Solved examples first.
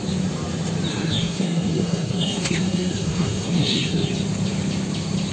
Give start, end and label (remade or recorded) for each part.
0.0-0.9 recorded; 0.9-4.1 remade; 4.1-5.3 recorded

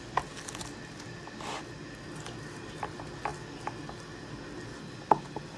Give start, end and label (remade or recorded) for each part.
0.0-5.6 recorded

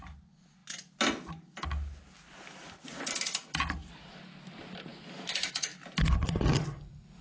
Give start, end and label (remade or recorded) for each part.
0.0-7.2 recorded

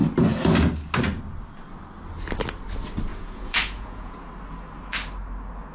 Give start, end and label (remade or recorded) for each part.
0.0-3.1 recorded; 3.1-4.3 remade; 4.3-5.7 recorded

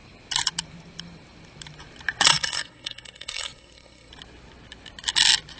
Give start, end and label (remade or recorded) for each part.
0.0-2.3 recorded; 2.3-4.1 remade; 4.1-5.6 recorded

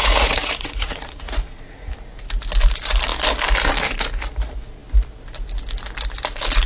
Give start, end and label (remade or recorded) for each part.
0.0-1.9 remade; 1.9-6.7 recorded

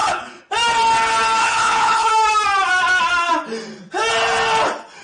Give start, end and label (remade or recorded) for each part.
0.0-0.5 remade; 0.5-1.4 recorded; 1.4-2.1 remade; 2.1-5.0 recorded